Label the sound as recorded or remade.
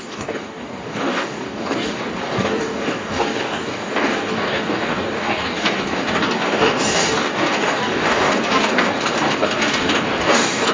remade